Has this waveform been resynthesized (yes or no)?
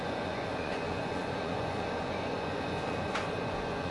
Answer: yes